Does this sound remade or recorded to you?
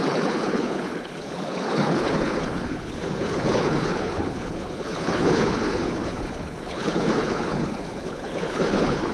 remade